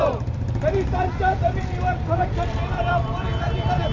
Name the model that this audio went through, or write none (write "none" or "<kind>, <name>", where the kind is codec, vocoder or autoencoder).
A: vocoder, BigVGAN v2